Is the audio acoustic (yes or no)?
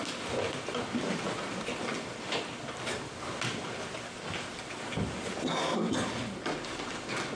yes